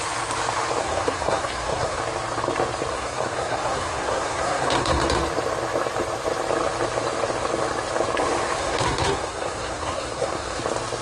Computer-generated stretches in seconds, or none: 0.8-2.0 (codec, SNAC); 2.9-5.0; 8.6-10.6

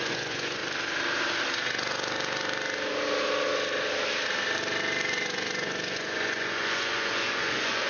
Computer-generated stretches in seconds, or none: 0.0-0.6 (vocoder, Vocos); 5.1-7.9